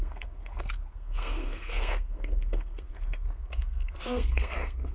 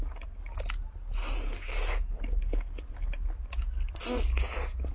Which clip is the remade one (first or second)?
first